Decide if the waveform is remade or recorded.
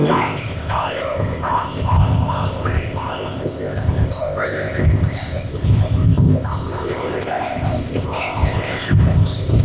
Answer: remade